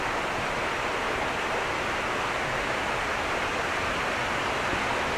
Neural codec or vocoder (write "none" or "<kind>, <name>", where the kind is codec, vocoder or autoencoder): none